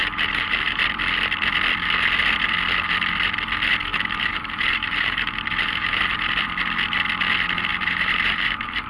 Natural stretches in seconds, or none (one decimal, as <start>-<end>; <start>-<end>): 0.8-3.9; 6.0-7.7